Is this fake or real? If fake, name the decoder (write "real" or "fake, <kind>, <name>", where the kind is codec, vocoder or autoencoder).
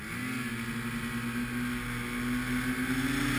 real